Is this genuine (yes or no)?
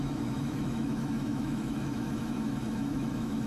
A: no